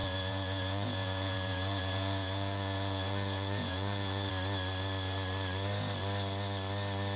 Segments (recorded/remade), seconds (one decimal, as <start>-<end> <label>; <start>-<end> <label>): 0.0-4.3 remade; 4.3-7.2 recorded